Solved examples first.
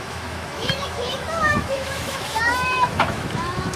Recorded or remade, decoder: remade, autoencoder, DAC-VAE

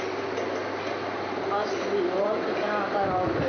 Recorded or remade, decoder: recorded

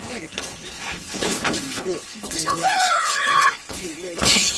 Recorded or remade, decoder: remade, codec, HILCodec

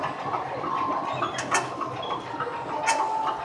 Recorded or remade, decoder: recorded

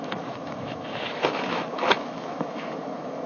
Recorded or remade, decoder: remade, autoencoder, DAC-VAE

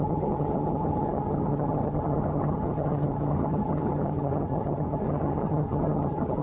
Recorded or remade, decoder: remade, vocoder, HiFi-GAN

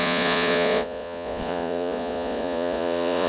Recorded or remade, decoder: remade, vocoder, Vocos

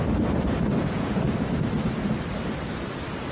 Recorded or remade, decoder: recorded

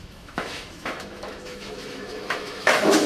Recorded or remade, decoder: remade, autoencoder, DAC-VAE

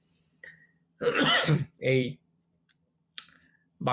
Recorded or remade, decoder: remade, vocoder, BigVGAN v2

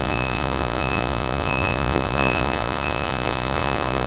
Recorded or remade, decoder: remade, vocoder, Vocos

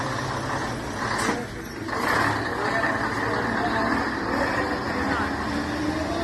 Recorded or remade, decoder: recorded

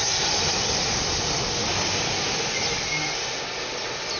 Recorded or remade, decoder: recorded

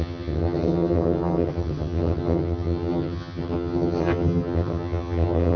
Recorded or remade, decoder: remade, vocoder, HiFi-GAN